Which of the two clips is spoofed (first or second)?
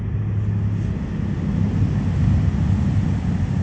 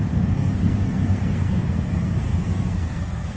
second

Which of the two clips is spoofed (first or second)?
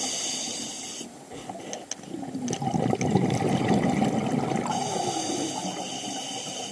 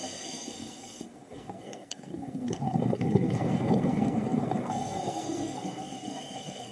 second